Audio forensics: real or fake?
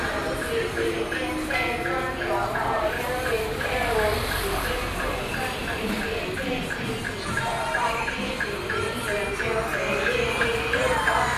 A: real